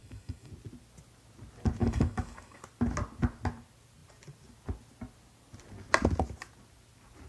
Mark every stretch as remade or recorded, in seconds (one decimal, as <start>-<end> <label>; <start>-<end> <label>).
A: 0.0-0.5 remade; 0.5-1.8 recorded; 1.8-2.6 remade; 2.6-7.3 recorded